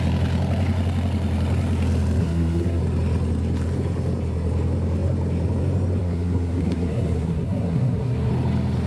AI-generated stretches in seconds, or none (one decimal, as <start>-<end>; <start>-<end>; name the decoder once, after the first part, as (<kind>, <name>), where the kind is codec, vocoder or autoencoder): 2.2-2.8 (codec, SNAC); 6.0-8.3